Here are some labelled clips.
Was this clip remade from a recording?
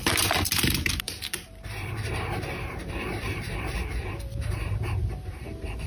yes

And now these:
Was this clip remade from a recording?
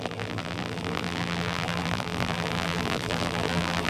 yes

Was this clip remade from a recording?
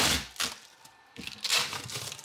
no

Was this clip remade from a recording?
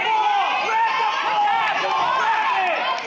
no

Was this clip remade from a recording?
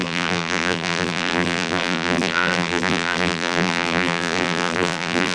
yes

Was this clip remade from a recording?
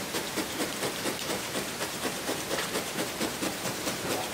yes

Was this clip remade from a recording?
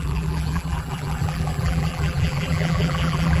yes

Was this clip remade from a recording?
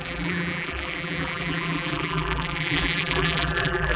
yes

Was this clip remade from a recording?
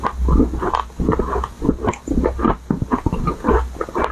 no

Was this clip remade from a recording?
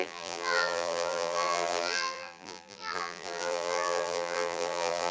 yes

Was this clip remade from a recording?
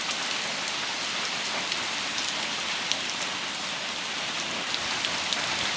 yes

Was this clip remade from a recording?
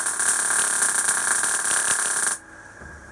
no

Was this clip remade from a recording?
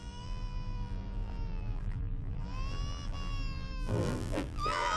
yes